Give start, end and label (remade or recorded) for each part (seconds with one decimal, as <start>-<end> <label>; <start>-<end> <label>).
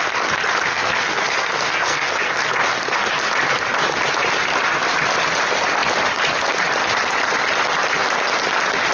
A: 0.0-0.7 recorded; 0.7-2.3 remade; 2.3-8.9 recorded